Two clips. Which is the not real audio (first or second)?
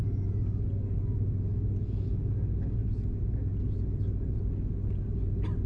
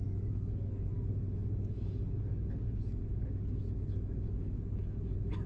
second